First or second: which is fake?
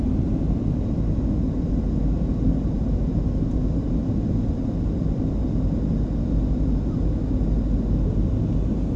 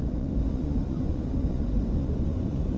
second